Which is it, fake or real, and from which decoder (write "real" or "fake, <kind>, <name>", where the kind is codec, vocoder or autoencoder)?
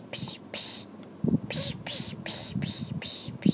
real